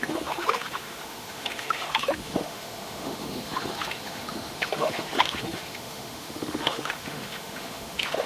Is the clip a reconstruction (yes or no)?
yes